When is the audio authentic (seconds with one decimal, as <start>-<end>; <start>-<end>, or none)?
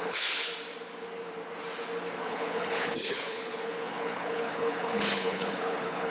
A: 0.5-2.2